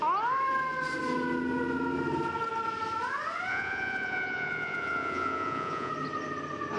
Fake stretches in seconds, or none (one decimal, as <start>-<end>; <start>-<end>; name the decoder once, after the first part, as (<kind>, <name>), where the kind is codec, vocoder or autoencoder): 3.5-5.9 (vocoder, Vocos)

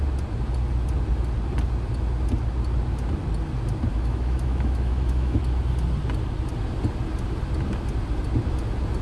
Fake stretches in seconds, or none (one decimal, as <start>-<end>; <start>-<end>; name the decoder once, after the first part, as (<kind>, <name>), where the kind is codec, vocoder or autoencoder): 3.9-5.4 (autoencoder, DAC-VAE)

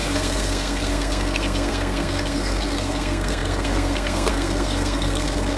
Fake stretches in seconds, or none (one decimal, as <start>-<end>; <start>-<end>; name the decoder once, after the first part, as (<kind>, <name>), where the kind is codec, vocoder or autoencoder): 0.0-5.6 (codec, SNAC)

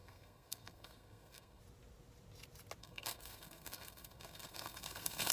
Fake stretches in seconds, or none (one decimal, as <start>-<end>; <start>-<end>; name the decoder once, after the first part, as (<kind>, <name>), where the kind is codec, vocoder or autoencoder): 0.0-1.6 (codec, SNAC); 2.8-5.3

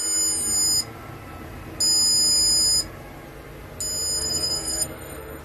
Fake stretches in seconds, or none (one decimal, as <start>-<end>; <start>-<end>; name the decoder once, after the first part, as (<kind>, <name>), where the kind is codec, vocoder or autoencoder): 4.2-5.4 (codec, SNAC)

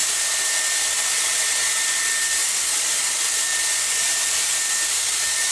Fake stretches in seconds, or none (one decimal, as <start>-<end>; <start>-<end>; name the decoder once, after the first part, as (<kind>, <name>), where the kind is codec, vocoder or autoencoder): none

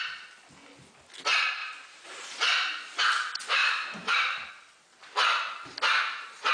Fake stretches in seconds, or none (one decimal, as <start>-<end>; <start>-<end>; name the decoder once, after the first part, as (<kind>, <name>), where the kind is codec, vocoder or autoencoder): 1.6-3.0 (vocoder, BigVGAN v2); 3.6-4.5

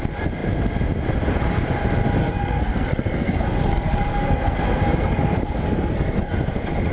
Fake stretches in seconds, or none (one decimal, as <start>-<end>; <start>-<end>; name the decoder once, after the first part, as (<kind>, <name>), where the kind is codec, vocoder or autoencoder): 2.2-6.3 (codec, SNAC)